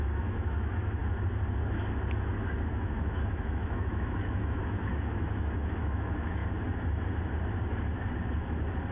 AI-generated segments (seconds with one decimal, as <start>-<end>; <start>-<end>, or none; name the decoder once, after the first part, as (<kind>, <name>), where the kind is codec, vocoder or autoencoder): 0.0-1.0 (autoencoder, DAC-VAE); 2.7-6.4